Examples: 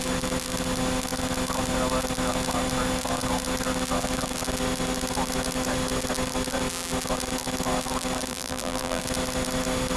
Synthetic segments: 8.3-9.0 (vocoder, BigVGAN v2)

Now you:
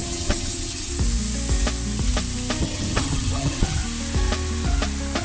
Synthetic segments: 0.0-0.9 (vocoder, HiFi-GAN); 2.6-3.8

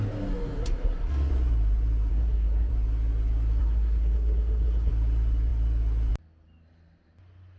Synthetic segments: 0.6-1.3 (codec, SNAC); 2.1-2.7; 3.6-4.9

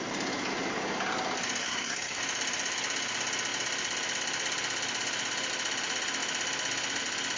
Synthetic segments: 1.6-2.2 (codec, SNAC)

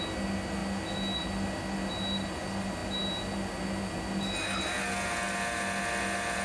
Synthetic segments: none